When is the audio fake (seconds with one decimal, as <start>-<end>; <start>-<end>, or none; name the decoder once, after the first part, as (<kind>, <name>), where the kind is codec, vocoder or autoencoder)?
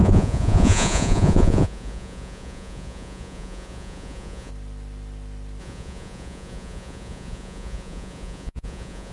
0.0-4.5 (vocoder, Vocos); 5.6-9.1